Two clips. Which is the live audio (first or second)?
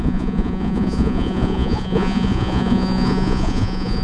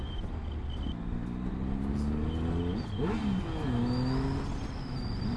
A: second